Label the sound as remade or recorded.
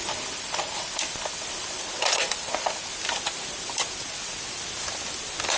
remade